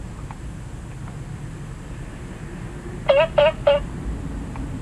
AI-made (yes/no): no